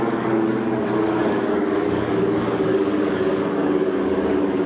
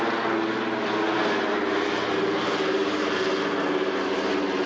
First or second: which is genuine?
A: second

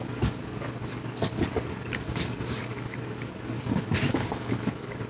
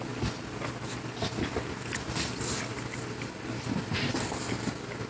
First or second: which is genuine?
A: second